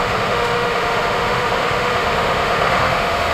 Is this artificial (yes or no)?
yes